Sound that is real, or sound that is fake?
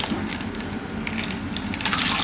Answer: real